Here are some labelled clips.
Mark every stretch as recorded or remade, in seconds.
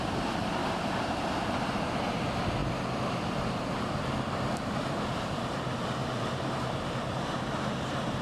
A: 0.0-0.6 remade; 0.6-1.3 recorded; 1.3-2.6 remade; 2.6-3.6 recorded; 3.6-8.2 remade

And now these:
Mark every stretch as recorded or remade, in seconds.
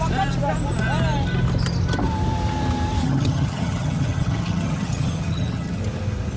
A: 0.0-3.0 recorded; 3.0-5.8 remade; 5.8-6.4 recorded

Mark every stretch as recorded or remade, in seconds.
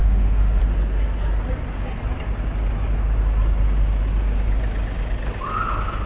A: 0.0-0.6 remade; 0.6-6.1 recorded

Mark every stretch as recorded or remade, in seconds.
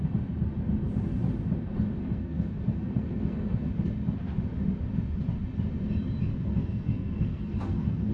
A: 0.0-2.0 recorded; 2.0-3.7 remade; 3.7-6.3 recorded; 6.3-8.1 remade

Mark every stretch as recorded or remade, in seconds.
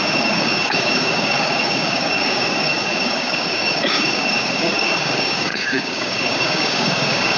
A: 0.0-7.4 remade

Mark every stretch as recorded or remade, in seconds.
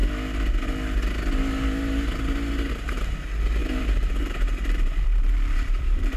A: 0.0-2.7 recorded; 2.7-6.2 remade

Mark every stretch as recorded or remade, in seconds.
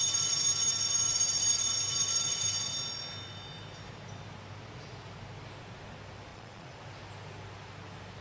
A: 0.0-6.3 recorded; 6.3-6.8 remade; 6.8-8.2 recorded